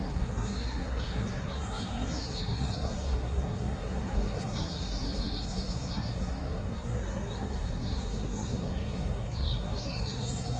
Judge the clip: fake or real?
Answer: fake